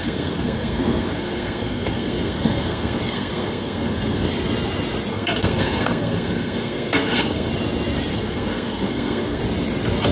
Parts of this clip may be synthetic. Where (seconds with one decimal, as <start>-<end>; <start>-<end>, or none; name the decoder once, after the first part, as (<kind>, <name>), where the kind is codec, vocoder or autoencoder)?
0.0-4.3 (codec, SNAC); 5.1-7.5; 8.1-9.4